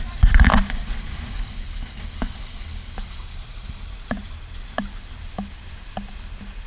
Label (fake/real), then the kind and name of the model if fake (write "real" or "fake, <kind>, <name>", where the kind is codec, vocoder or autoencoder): real